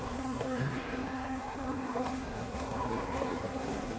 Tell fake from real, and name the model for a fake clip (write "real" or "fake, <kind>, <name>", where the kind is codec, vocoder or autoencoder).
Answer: fake, codec, SNAC